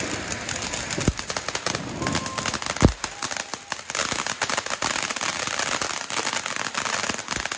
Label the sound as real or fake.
real